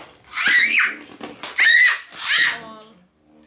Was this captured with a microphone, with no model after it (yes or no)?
yes